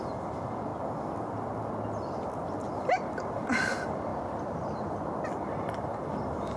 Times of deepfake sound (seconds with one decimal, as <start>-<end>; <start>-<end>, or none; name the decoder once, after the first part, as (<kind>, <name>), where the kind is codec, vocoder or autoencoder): 0.0-0.7 (vocoder, BigVGAN v2); 2.8-4.1; 5.6-6.6